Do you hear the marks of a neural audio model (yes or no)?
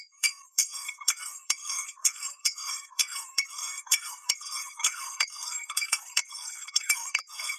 yes